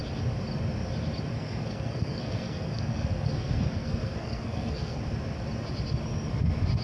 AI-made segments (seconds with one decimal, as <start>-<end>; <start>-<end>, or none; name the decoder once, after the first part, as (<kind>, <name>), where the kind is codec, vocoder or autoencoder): 1.3-5.0 (codec, SNAC)